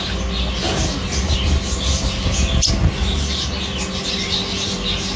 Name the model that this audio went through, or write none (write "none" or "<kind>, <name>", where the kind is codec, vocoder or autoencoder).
none